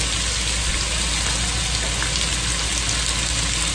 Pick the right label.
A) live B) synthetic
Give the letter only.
A